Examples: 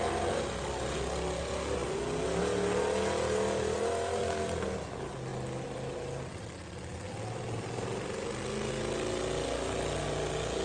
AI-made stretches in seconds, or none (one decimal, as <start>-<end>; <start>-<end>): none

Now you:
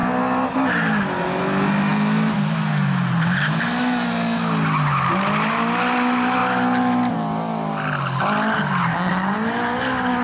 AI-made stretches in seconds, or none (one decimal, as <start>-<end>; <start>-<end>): none

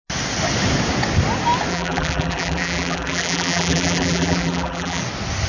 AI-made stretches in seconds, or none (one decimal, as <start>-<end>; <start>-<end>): 1.7-5.0

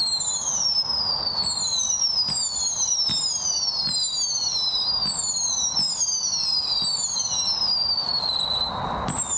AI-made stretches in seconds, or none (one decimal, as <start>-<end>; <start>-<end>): none

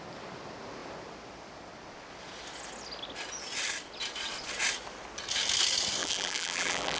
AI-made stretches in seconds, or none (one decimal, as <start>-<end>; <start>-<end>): 6.0-7.0

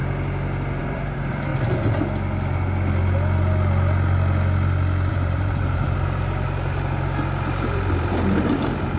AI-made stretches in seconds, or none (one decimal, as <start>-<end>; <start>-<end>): 0.8-1.5; 5.1-9.0

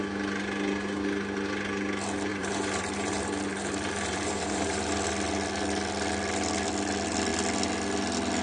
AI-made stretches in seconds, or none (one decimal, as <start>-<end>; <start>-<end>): 2.3-4.9

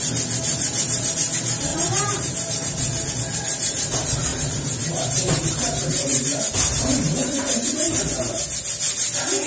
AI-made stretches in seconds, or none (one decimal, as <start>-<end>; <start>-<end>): 1.7-3.1; 4.3-8.0